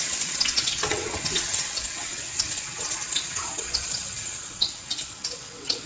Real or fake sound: fake